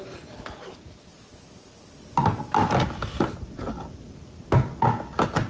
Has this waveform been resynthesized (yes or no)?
no